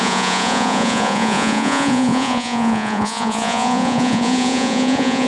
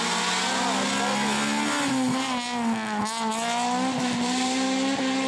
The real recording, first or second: second